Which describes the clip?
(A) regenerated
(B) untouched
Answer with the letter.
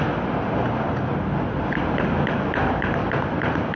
B